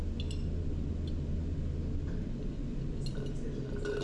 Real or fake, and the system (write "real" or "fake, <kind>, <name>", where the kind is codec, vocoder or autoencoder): real